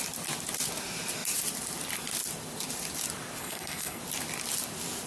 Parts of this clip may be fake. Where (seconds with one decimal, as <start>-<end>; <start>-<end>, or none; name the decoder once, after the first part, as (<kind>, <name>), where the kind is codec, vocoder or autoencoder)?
3.4-4.0 (codec, SNAC)